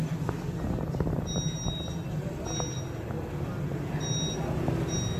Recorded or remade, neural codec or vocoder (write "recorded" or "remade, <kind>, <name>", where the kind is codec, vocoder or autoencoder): recorded